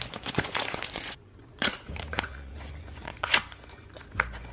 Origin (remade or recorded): remade